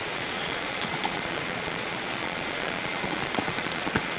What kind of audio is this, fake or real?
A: fake